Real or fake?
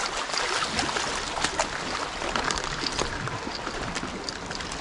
real